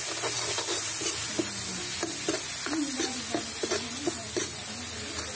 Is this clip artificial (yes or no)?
no